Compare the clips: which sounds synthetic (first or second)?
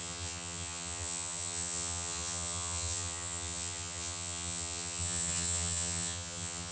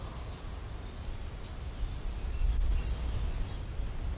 first